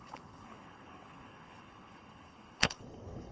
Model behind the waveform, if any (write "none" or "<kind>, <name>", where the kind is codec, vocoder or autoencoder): codec, HILCodec